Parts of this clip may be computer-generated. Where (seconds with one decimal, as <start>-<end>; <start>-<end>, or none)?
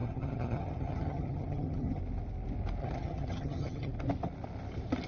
0.0-2.0; 2.8-3.9